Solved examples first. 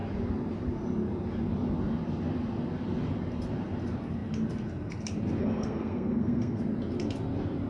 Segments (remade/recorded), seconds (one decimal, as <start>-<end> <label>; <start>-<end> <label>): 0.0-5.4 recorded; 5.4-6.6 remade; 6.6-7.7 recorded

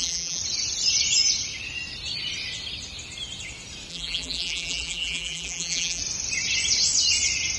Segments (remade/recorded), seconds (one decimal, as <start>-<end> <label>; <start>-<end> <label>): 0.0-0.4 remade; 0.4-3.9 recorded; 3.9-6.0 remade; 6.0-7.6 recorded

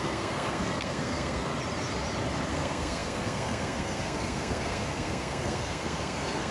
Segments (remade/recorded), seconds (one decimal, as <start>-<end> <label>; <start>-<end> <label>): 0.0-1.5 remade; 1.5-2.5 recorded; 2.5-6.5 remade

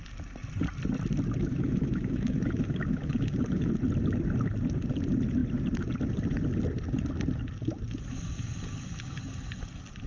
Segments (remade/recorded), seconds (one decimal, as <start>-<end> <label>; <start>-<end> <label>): 0.0-1.5 recorded; 1.5-3.7 remade; 3.7-10.1 recorded

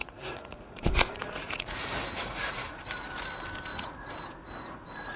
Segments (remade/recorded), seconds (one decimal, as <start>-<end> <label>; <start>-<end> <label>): 0.0-3.1 remade; 3.1-3.7 recorded; 3.7-5.2 remade

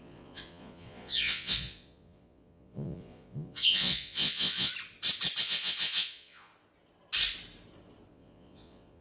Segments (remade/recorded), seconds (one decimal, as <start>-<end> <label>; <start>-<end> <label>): 0.0-4.7 remade; 4.7-5.4 recorded; 5.4-6.5 remade; 6.5-8.1 recorded; 8.1-9.0 remade